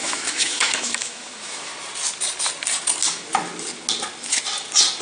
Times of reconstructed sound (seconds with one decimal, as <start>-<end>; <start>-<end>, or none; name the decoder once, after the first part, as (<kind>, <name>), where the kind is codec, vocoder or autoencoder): 0.0-1.7 (autoencoder, DAC-VAE)